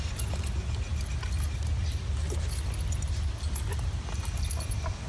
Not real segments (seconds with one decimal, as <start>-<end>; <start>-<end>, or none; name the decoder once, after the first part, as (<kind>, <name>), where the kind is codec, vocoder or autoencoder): none